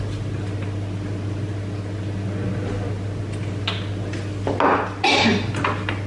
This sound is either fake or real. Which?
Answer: real